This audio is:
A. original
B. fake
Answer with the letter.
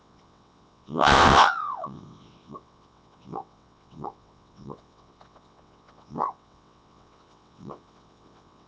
B